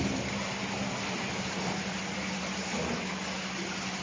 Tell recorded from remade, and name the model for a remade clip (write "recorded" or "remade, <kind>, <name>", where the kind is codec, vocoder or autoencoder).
recorded